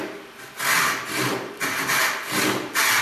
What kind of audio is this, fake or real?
real